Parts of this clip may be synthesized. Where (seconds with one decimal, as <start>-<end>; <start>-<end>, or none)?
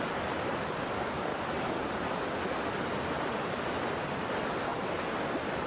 none